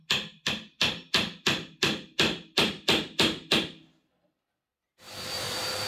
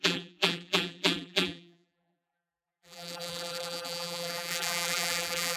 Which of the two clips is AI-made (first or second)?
second